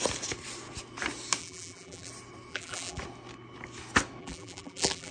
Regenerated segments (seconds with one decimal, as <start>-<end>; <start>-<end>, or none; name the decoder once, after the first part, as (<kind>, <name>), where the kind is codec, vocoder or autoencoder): 1.4-2.1 (vocoder, BigVGAN v2); 2.5-3.0; 4.2-5.1